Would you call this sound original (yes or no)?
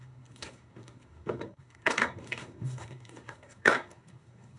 no